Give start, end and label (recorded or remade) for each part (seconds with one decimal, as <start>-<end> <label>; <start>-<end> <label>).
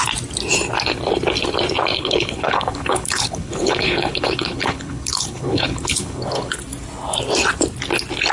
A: 0.0-1.9 recorded; 1.9-6.6 remade; 6.6-8.3 recorded